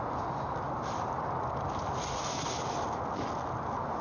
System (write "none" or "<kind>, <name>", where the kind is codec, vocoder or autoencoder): none